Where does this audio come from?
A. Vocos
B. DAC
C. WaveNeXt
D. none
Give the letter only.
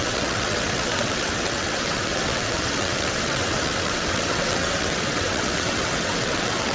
C